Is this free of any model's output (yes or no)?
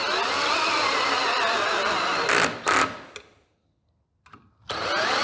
yes